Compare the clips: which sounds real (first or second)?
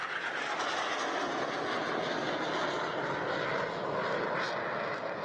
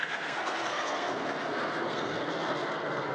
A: first